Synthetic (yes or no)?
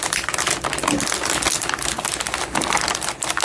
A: no